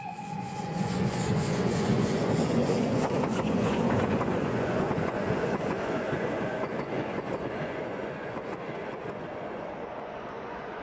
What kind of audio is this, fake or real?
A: fake